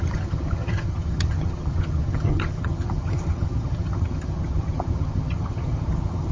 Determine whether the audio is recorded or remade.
remade